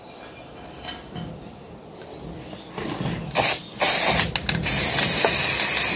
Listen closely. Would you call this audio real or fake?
real